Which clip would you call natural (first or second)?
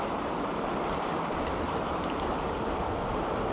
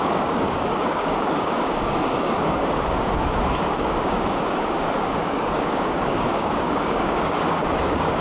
first